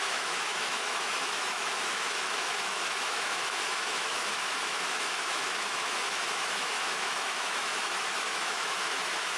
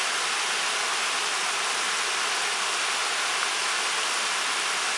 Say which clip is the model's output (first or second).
first